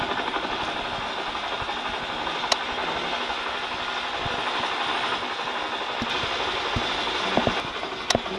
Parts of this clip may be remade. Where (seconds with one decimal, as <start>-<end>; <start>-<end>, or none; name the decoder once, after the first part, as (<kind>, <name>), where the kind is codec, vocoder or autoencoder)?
none

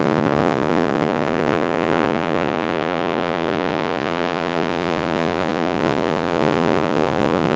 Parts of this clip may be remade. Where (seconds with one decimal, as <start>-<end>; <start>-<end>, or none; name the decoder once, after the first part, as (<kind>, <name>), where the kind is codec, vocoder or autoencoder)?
0.0-7.6 (vocoder, Vocos)

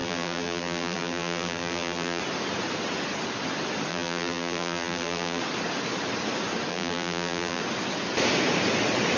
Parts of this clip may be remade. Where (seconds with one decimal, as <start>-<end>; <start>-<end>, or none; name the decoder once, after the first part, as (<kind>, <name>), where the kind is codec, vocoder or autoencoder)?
0.0-2.2 (vocoder, BigVGAN v2); 3.9-5.4; 6.7-7.6

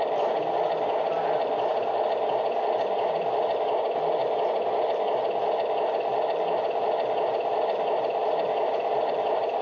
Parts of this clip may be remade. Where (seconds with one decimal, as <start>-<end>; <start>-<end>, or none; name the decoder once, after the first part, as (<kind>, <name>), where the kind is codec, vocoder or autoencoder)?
none

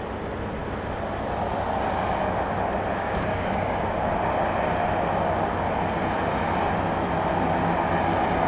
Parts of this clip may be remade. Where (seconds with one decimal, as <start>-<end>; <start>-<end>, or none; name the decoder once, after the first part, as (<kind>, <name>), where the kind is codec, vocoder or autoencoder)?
2.9-3.6 (codec, DAC)

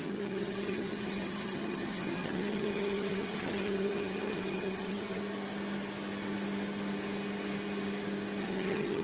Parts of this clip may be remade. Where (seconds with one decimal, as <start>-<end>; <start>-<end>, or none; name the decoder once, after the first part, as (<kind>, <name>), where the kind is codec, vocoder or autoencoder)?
0.0-5.2 (vocoder, HiFi-GAN); 8.4-9.0